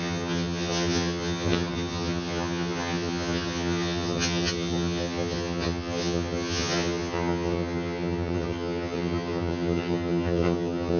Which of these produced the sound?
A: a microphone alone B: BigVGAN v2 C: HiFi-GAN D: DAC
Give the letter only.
C